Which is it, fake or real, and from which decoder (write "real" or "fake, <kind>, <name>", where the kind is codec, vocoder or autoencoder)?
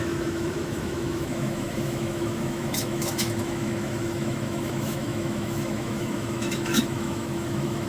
fake, autoencoder, DAC-VAE